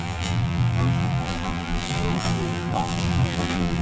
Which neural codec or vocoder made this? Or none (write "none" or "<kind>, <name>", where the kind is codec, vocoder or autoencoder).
vocoder, BigVGAN v2